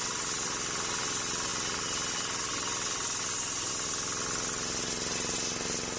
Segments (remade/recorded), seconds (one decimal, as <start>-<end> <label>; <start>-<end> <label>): 0.0-6.0 recorded